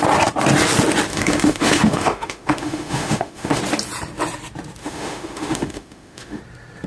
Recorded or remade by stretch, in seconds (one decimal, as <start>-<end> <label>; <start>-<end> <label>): 0.0-1.1 recorded; 1.1-3.6 remade; 3.6-4.8 recorded; 4.8-6.4 remade; 6.4-6.9 recorded